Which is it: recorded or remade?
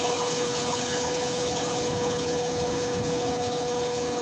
remade